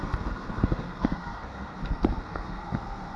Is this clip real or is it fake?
fake